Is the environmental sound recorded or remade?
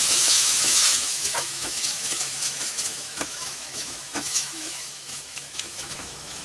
remade